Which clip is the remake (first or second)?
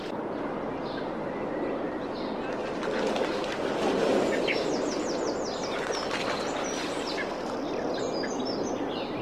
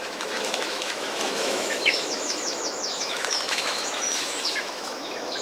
second